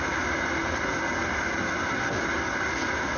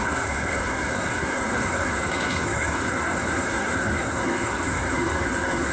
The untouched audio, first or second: first